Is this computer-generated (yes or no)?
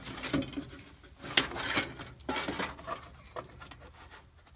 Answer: no